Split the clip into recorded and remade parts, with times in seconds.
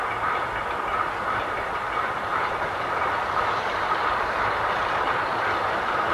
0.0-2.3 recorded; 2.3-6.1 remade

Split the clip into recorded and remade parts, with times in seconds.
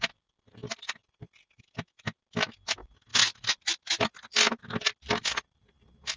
0.0-6.2 recorded